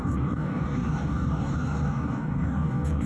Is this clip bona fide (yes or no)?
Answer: no